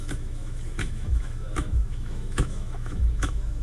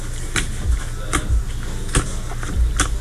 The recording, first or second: second